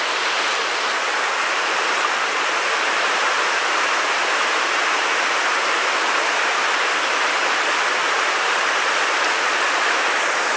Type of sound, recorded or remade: recorded